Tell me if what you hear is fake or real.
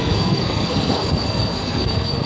fake